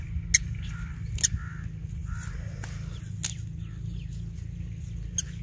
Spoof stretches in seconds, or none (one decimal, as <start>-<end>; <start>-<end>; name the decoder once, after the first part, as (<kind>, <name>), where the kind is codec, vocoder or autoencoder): none